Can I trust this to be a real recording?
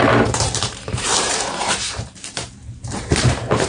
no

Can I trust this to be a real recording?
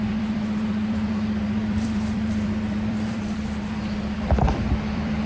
no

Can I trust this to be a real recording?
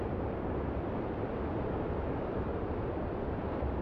yes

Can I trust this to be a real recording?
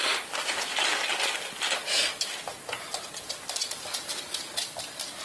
yes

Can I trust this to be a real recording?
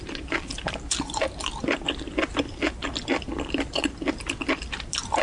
yes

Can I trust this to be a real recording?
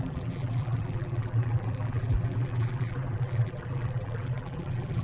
no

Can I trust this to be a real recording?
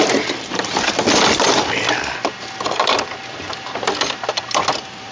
no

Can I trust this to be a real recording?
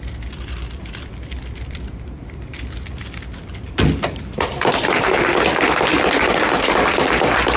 no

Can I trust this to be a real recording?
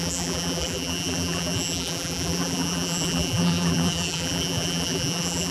no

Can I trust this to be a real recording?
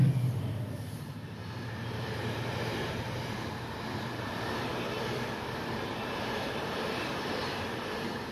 no